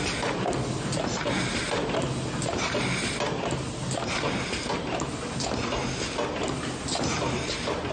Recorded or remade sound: recorded